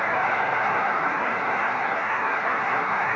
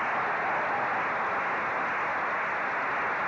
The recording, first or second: second